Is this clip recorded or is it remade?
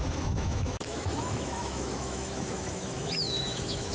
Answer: remade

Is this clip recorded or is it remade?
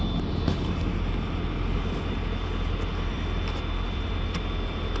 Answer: recorded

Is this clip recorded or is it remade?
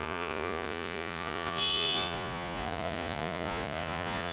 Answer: remade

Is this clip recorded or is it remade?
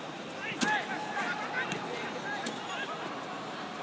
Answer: recorded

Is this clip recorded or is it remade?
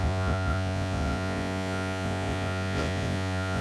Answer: remade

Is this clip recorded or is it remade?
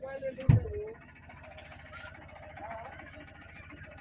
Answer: recorded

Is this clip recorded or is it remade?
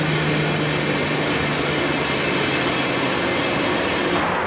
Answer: recorded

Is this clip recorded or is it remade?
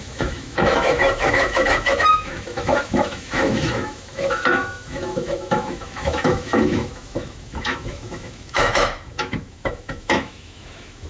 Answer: remade